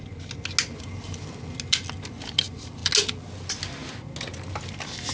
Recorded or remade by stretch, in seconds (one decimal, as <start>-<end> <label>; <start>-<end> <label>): 0.0-5.1 recorded